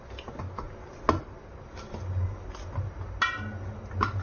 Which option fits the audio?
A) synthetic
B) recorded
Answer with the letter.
B